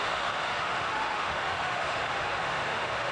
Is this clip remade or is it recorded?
remade